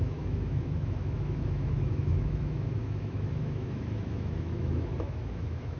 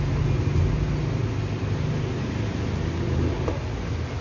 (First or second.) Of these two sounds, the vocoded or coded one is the first